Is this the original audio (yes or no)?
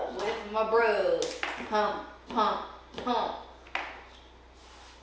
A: yes